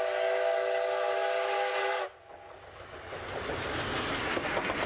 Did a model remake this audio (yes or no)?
no